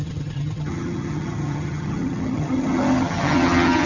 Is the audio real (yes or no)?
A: no